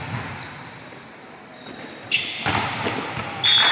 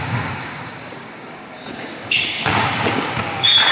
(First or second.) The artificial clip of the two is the second